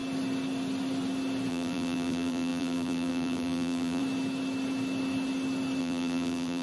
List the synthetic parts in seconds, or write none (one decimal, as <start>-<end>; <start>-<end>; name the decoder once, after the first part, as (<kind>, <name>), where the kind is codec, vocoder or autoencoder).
1.5-4.0 (vocoder, BigVGAN v2); 5.8-6.6